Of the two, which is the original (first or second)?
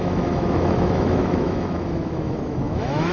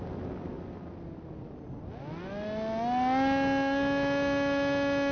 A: second